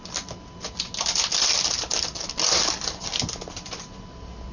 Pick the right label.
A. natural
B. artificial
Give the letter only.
A